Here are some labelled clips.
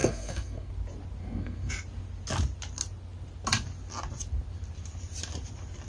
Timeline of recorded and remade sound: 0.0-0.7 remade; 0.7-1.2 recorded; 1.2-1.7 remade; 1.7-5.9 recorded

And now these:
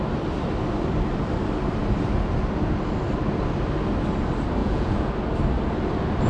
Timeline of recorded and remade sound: 0.0-4.6 recorded; 4.6-5.1 remade; 5.1-6.3 recorded